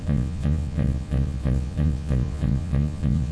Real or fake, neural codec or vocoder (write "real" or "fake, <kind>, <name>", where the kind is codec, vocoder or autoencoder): fake, vocoder, Vocos